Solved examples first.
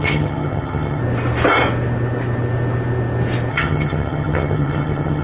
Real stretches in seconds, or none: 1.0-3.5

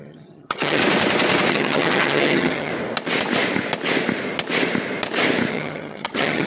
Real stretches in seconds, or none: 0.8-1.5; 2.7-5.5